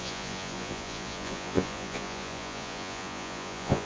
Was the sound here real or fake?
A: fake